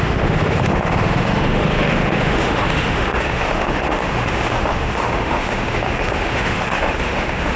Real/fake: fake